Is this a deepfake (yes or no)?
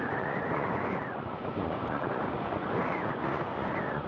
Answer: yes